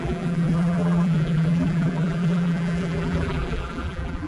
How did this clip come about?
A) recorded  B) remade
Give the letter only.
B